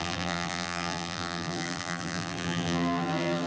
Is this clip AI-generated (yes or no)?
yes